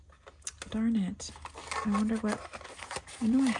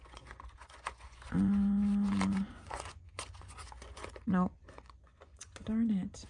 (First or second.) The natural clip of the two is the first